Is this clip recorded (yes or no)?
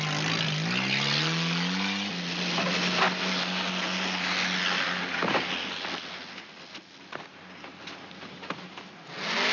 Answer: yes